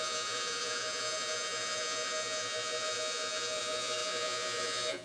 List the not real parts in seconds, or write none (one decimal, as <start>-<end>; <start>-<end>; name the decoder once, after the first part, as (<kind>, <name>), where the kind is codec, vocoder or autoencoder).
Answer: 0.0-5.0 (vocoder, Vocos)